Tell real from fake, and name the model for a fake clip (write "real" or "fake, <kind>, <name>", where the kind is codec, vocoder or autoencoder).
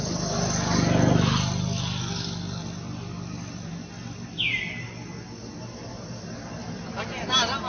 real